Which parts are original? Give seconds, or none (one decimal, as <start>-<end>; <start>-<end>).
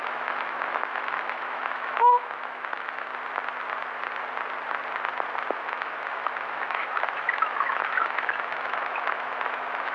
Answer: 3.1-5.5